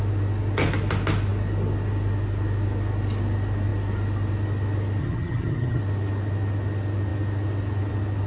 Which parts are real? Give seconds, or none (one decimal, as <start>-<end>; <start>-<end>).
0.0-5.0; 5.8-8.3